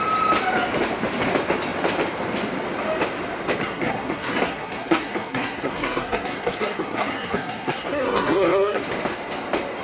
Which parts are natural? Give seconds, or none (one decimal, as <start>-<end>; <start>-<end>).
0.0-3.6; 8.8-9.8